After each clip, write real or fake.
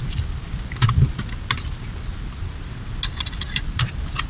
real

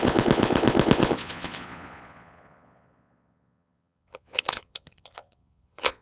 fake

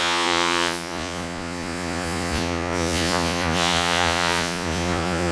fake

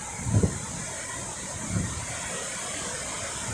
real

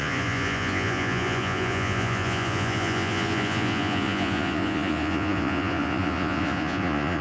fake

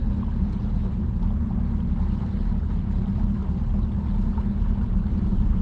real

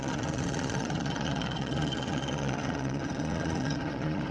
fake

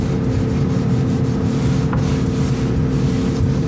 real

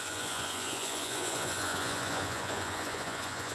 fake